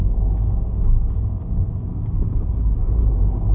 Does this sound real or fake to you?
fake